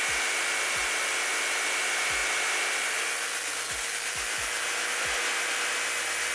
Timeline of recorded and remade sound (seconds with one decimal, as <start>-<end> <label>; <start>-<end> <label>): 0.0-6.3 recorded